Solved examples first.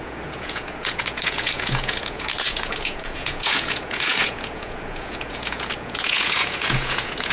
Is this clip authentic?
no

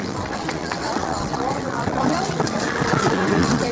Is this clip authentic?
no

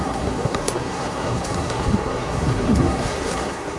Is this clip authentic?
no